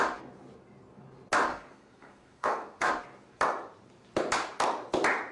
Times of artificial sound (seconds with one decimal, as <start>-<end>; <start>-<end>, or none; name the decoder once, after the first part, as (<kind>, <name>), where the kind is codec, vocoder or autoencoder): 1.5-2.9 (codec, SNAC)